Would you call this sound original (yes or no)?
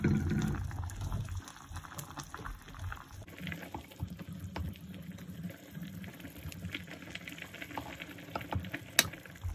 yes